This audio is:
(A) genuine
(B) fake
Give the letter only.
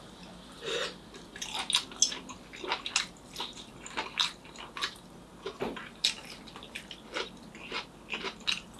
A